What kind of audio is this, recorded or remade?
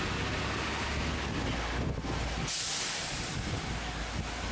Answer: recorded